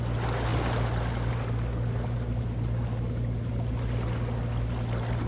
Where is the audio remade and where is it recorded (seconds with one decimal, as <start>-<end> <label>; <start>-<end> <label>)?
0.0-5.3 recorded